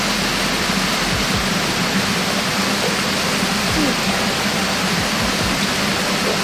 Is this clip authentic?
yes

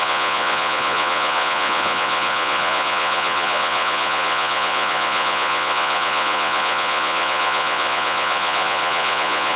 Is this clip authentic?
no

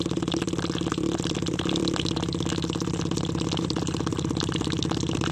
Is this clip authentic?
no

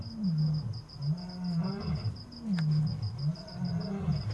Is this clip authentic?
yes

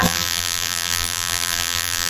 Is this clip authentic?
no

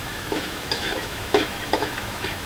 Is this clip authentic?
no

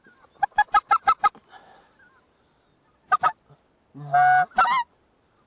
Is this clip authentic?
yes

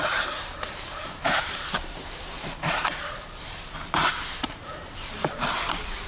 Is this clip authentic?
no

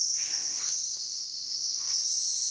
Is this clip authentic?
no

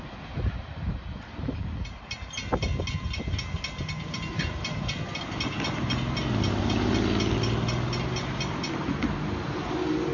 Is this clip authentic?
yes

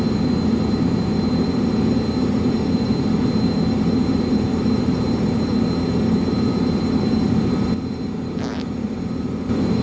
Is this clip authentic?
no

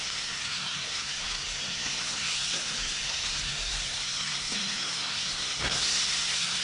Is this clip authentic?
no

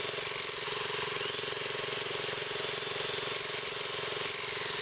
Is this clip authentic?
yes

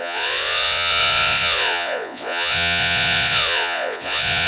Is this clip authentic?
no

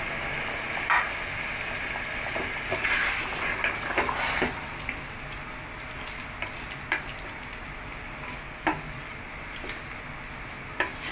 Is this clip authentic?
yes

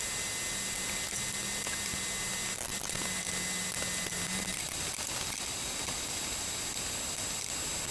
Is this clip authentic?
yes